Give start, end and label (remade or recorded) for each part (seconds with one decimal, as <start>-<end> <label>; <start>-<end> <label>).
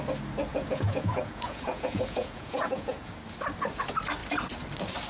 0.0-0.5 recorded; 0.5-3.1 remade; 3.1-5.1 recorded